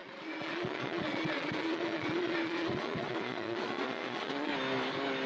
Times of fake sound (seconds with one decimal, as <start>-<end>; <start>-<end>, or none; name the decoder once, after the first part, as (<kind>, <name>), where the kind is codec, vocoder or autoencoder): 0.0-4.5 (vocoder, Vocos)

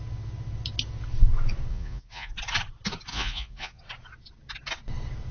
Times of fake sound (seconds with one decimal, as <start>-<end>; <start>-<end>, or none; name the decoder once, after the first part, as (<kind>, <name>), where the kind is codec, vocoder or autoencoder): 1.7-2.3 (vocoder, Vocos); 3.1-3.8